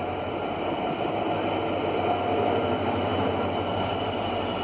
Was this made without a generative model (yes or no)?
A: yes